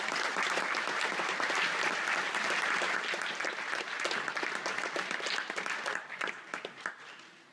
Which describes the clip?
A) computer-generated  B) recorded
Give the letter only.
A